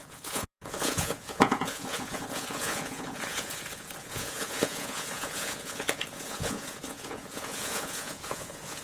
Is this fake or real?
fake